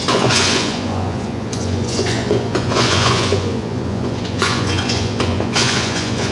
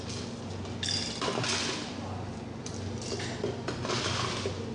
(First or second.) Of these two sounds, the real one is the second